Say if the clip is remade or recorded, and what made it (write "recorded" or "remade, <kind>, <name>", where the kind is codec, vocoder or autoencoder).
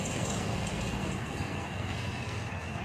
remade, codec, SNAC